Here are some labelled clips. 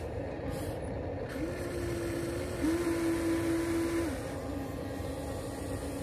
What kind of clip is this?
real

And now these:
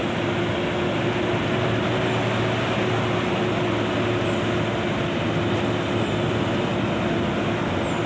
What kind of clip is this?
real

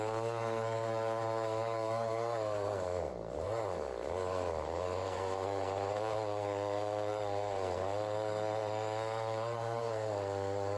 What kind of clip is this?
fake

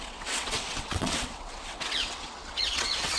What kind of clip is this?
fake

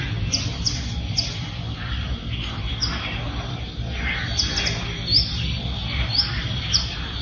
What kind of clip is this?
real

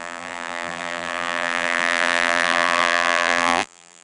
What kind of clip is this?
fake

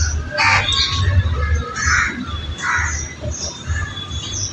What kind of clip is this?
real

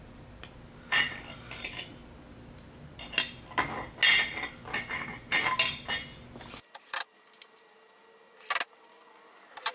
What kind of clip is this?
real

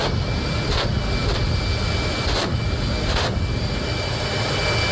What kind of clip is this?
real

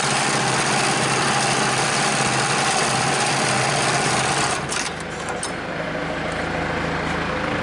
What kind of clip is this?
real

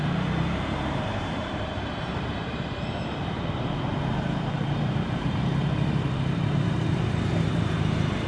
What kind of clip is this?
fake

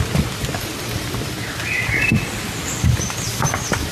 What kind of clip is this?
real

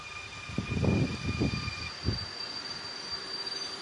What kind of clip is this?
real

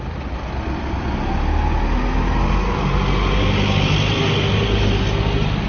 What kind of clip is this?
real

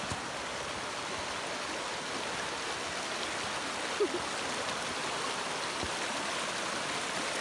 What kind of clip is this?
real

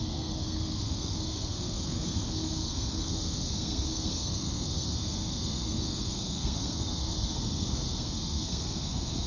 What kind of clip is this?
fake